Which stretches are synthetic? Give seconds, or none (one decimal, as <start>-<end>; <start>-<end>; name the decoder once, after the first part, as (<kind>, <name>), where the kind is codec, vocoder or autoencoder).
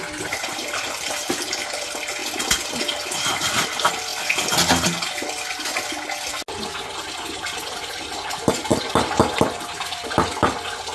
none